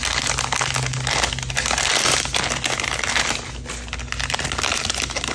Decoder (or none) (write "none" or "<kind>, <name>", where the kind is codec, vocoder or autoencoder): none